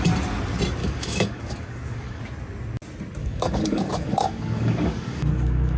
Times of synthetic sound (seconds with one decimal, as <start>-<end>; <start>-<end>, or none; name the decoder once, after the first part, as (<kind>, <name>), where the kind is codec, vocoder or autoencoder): 0.8-2.2 (codec, DAC); 3.2-5.8